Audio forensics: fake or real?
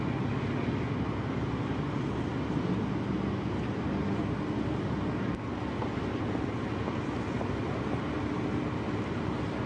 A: real